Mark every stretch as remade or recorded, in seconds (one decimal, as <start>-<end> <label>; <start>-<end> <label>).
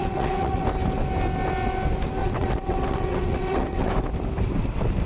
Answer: 0.0-0.6 remade; 0.6-2.2 recorded; 2.2-3.9 remade; 3.9-5.1 recorded